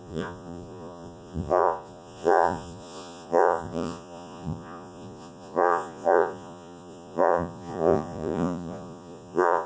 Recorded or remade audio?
remade